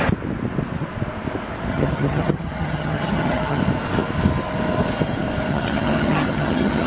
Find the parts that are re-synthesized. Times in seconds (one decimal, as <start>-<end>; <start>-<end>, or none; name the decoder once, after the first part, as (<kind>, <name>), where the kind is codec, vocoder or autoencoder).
1.7-3.6 (vocoder, HiFi-GAN); 5.5-6.9